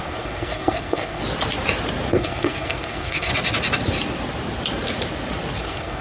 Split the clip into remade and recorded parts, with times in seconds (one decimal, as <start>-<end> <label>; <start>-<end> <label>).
0.0-1.2 remade; 1.2-2.1 recorded; 2.1-3.3 remade; 3.3-5.6 recorded; 5.6-6.0 remade